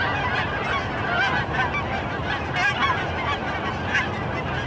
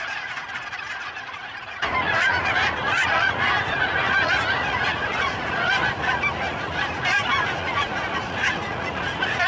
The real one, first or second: first